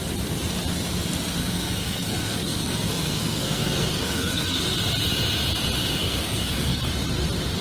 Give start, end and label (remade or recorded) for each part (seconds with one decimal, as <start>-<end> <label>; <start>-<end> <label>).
0.0-1.4 recorded; 1.4-4.6 remade; 4.6-6.0 recorded; 6.0-6.8 remade; 6.8-7.6 recorded